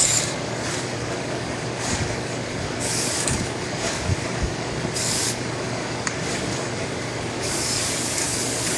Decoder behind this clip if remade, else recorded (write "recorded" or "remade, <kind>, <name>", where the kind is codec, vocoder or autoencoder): remade, codec, DAC